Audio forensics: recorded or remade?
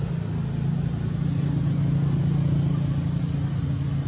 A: recorded